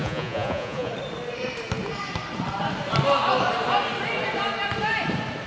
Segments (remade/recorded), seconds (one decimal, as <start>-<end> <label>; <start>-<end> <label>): 0.0-0.9 remade; 0.9-5.5 recorded